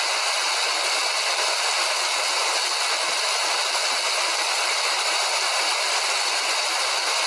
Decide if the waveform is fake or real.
real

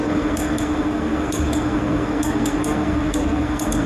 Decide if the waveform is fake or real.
fake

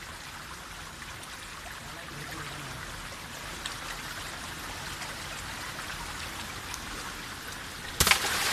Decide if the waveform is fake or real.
real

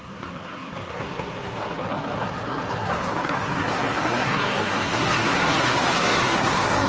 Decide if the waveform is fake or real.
fake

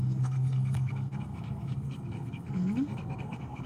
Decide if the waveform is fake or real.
fake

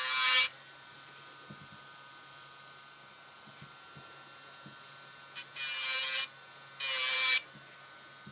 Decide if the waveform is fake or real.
real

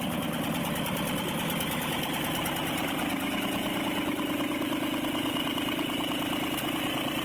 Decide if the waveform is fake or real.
real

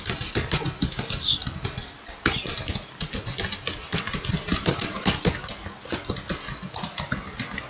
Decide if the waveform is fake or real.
real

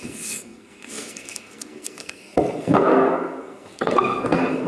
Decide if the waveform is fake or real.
fake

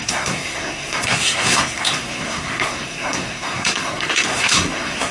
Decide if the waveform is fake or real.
fake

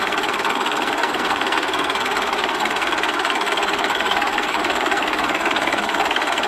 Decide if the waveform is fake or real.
fake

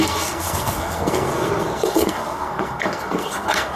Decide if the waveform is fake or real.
fake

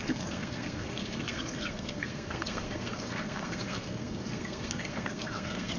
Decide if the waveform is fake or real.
fake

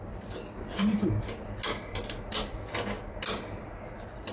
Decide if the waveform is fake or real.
real